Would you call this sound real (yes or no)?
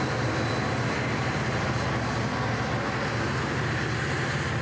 yes